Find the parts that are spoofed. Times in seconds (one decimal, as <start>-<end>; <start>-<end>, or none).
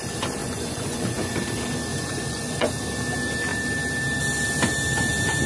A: 0.4-1.3; 1.9-2.7